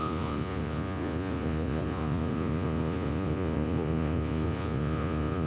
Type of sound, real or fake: fake